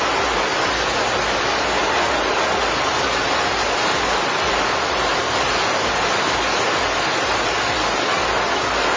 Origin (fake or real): real